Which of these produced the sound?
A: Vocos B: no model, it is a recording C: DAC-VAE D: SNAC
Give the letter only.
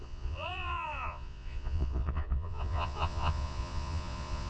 A